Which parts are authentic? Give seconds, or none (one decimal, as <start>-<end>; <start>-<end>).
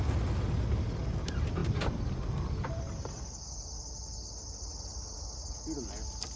0.0-1.6; 2.8-6.4